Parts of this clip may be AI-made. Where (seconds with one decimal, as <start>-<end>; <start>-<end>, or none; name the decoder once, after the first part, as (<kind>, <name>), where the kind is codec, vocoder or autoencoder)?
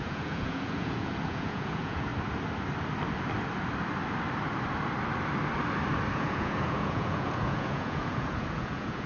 0.0-2.1 (vocoder, Vocos); 6.1-9.1